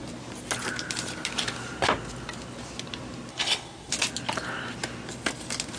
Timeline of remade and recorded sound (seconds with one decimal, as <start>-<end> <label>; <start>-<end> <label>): 0.0-3.3 recorded; 3.3-3.9 remade; 3.9-5.8 recorded